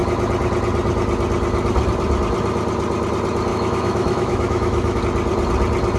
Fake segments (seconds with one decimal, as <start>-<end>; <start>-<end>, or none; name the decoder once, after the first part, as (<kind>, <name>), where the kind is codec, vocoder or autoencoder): 3.5-5.0 (autoencoder, DAC-VAE)